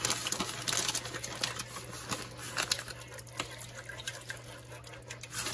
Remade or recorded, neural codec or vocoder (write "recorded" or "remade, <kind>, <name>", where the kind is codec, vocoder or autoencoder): recorded